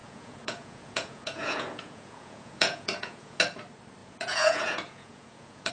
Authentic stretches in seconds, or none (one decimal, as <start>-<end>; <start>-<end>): 3.4-4.0